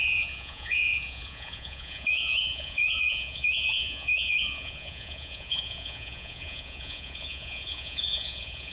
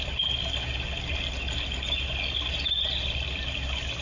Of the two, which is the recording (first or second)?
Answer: second